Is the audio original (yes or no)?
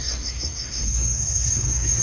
no